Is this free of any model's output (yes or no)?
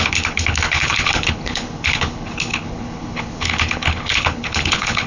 no